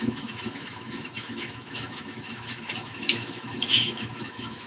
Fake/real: fake